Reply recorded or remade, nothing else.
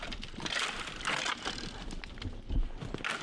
recorded